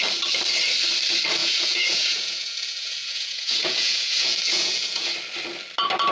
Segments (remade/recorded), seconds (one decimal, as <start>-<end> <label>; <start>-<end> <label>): 0.0-1.4 recorded; 1.4-5.1 remade; 5.1-6.1 recorded